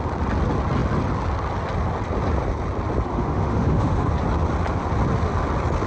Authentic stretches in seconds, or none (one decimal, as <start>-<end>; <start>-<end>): 0.0-3.1; 4.1-5.9